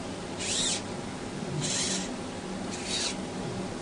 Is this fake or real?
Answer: real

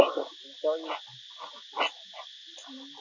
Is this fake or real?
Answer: real